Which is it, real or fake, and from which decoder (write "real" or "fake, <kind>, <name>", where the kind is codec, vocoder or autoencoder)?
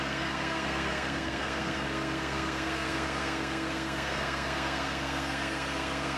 fake, codec, SNAC